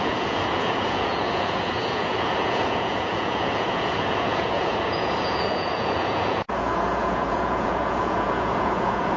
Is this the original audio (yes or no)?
no